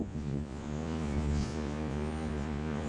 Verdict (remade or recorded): remade